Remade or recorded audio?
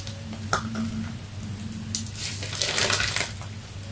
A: recorded